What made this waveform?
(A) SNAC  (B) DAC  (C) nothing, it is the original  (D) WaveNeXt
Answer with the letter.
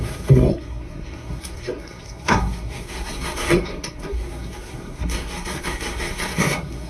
A